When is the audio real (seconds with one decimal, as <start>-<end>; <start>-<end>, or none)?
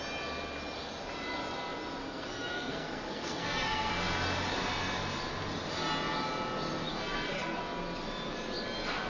0.0-2.0; 3.9-6.9; 7.6-9.1